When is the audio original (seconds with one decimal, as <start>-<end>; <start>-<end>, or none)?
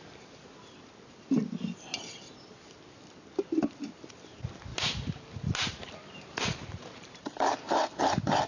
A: 0.0-4.7